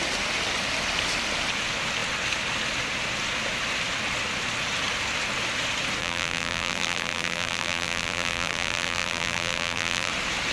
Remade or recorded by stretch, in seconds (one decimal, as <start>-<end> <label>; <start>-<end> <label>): 0.0-6.0 recorded; 6.0-10.1 remade; 10.1-10.5 recorded